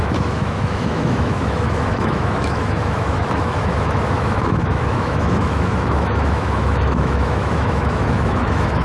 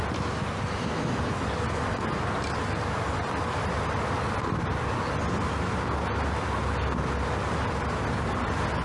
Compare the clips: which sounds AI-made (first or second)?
first